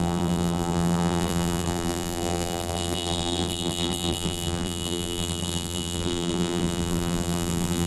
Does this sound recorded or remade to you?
remade